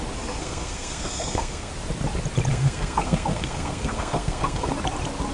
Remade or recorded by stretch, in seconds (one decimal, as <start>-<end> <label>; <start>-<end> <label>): 0.0-0.4 recorded; 0.4-1.7 remade; 1.7-2.5 recorded; 2.5-4.7 remade; 4.7-5.3 recorded